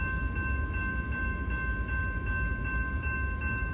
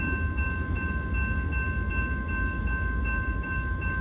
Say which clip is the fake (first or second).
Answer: second